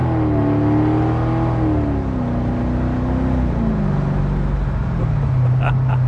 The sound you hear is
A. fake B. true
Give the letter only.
B